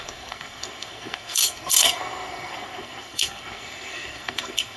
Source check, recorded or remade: remade